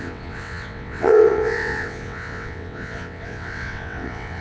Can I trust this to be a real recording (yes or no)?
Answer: no